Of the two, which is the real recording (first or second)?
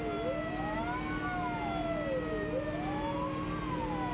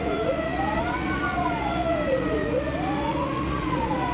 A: first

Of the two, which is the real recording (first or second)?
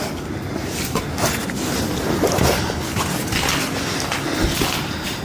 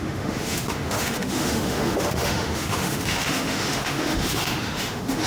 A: first